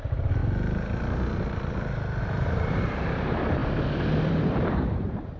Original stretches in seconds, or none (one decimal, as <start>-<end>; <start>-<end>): 0.4-2.2